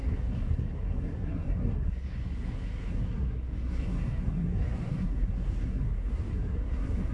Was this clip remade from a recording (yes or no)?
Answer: yes